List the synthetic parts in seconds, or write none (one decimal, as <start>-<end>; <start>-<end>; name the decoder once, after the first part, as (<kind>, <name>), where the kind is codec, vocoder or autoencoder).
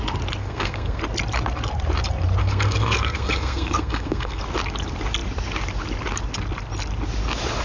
0.4-1.0 (codec, SNAC); 2.4-4.4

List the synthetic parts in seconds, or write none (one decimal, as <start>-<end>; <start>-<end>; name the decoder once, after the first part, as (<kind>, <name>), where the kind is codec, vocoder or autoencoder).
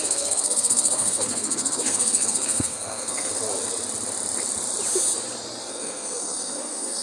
0.0-3.3 (codec, SNAC); 5.7-7.0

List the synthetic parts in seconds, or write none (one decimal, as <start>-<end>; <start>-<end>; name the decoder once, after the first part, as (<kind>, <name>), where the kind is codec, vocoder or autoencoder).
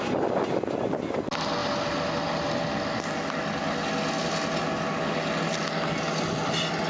none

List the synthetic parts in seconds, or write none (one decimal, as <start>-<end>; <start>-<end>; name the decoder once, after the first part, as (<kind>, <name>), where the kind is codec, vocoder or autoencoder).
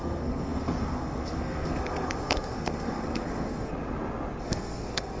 0.0-3.7 (codec, SNAC); 4.4-5.2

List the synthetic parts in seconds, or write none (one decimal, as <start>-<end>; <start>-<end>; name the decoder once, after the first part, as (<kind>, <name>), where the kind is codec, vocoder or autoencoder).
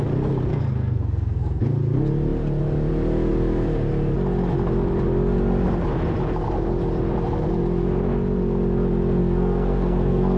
0.5-1.6 (codec, SNAC); 9.2-10.4